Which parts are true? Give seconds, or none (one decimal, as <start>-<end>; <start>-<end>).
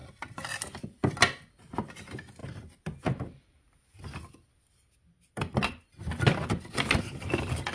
0.0-7.7